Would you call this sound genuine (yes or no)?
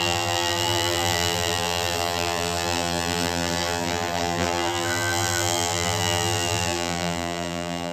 no